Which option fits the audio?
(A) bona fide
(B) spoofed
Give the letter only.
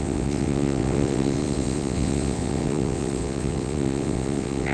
B